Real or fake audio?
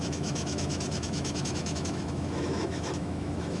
fake